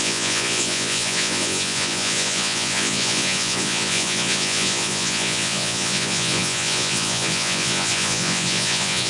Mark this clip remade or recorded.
remade